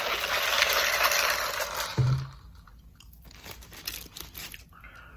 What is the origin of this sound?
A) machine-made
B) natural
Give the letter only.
B